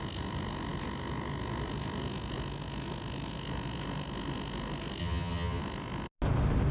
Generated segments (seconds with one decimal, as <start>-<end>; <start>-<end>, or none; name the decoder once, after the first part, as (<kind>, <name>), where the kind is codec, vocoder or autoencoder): 5.0-5.6 (vocoder, HiFi-GAN)

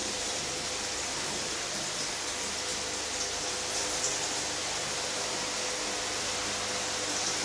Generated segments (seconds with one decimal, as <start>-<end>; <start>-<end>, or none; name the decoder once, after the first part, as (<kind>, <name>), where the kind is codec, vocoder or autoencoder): 0.0-2.1 (vocoder, BigVGAN v2)